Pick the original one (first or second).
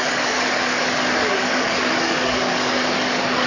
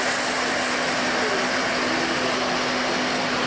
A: second